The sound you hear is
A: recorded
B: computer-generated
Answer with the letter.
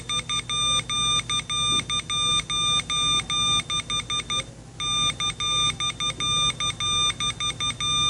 A